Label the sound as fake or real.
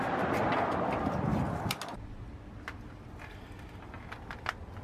real